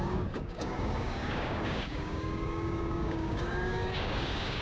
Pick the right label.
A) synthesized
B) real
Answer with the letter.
A